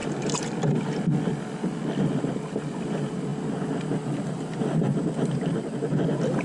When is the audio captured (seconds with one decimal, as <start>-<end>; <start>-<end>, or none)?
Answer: 0.0-6.4